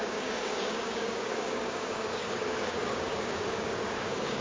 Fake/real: fake